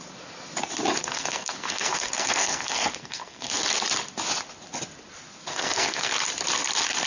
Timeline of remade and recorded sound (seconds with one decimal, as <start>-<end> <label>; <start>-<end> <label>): 0.0-1.0 recorded; 1.0-3.6 remade; 3.6-5.5 recorded; 5.5-6.1 remade; 6.1-7.1 recorded